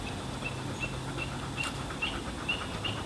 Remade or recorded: recorded